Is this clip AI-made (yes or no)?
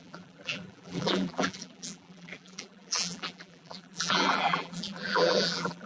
yes